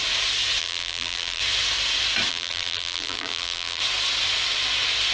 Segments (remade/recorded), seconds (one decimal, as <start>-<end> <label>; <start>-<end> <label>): 0.0-0.6 recorded; 0.6-1.4 remade; 1.4-2.3 recorded; 2.3-3.8 remade; 3.8-5.1 recorded